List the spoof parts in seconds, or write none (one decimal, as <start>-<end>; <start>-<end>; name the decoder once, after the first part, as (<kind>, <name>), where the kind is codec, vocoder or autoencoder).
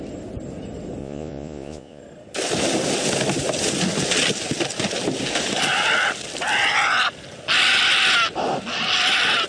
1.0-2.0 (vocoder, Vocos)